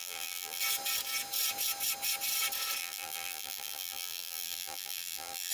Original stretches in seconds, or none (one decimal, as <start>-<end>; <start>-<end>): 0.6-2.8